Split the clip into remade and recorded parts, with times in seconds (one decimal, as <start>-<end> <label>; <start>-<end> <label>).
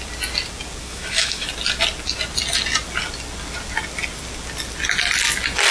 0.0-0.8 recorded; 0.8-1.5 remade; 1.5-5.7 recorded